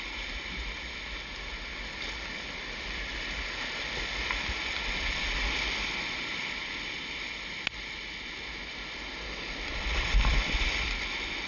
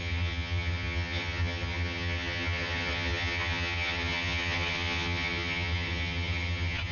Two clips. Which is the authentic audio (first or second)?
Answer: first